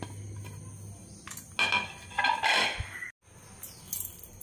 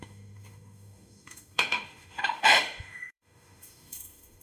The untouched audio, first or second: first